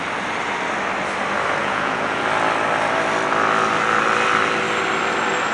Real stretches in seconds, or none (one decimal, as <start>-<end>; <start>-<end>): 0.0-1.6; 2.2-5.5

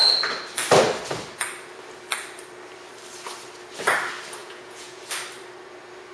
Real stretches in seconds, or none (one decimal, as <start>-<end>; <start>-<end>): 0.0-4.4; 5.0-6.1

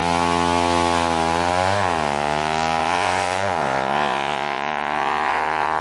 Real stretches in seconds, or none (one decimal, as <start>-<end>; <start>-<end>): 0.0-2.8

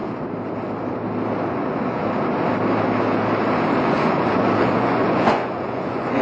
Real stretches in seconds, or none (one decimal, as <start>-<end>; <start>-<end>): 0.0-1.5; 2.0-3.8

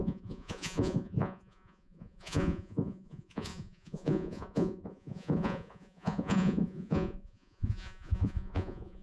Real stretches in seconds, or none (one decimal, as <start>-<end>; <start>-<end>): none

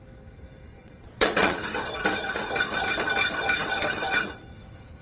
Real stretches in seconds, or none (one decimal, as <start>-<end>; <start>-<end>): 0.0-0.7; 1.6-5.0

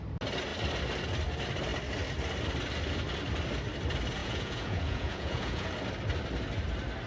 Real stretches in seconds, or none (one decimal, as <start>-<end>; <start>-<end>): 0.0-4.2; 5.7-7.1